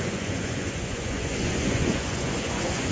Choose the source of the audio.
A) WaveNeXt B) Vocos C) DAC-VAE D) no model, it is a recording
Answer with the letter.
B